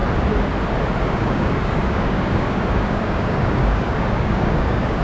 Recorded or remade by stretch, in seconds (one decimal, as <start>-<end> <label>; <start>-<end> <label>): 0.0-1.0 recorded; 1.0-5.0 remade